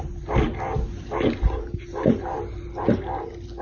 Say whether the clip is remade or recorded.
recorded